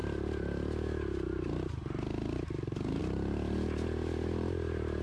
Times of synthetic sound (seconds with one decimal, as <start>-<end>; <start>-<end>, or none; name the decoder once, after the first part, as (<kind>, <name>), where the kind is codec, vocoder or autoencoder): none